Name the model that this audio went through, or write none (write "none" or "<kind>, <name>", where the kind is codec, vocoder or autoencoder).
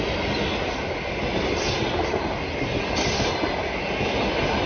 none